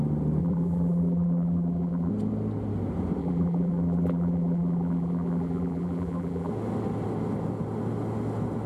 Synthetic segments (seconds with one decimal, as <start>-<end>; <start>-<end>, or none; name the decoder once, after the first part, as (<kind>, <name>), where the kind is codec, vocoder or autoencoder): 0.4-2.1 (vocoder, BigVGAN v2); 3.2-6.5